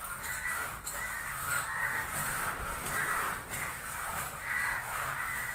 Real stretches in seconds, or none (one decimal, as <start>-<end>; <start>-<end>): 2.2-3.6